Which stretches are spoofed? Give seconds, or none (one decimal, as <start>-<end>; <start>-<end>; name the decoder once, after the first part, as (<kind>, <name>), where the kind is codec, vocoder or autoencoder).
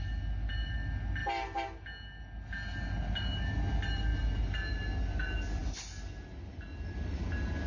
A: none